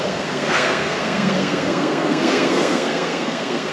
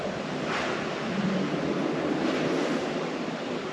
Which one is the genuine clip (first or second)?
second